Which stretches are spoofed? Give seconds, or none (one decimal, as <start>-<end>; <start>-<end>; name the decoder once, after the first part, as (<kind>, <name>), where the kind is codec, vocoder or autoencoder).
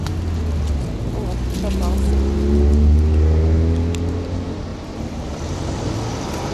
4.7-5.9 (vocoder, BigVGAN v2)